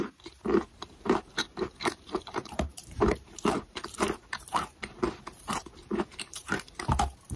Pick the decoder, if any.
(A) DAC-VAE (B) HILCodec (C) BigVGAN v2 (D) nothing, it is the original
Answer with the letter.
C